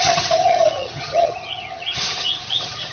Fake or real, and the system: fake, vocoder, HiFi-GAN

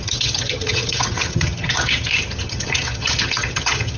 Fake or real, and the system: fake, vocoder, HiFi-GAN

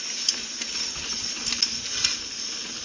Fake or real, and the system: real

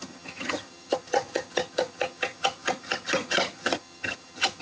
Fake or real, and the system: fake, vocoder, HiFi-GAN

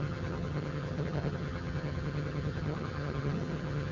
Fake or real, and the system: fake, vocoder, HiFi-GAN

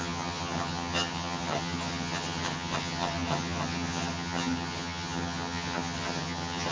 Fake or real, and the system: fake, vocoder, HiFi-GAN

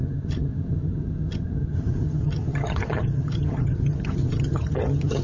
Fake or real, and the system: fake, vocoder, HiFi-GAN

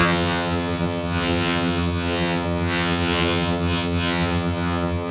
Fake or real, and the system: fake, vocoder, HiFi-GAN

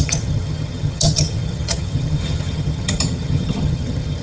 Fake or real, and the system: fake, vocoder, HiFi-GAN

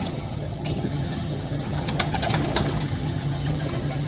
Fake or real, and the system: fake, vocoder, HiFi-GAN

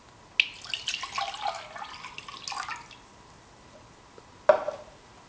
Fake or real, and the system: real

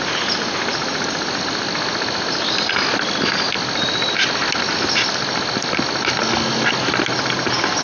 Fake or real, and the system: real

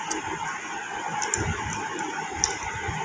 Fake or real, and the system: real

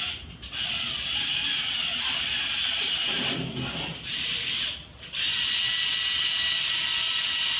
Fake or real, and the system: real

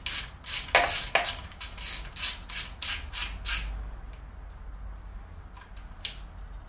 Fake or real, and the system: real